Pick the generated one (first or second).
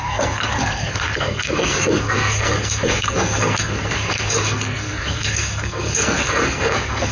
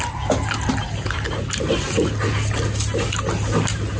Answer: first